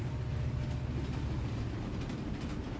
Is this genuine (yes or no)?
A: yes